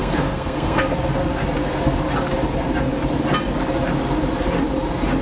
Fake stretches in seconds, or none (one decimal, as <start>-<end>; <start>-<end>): 0.0-1.0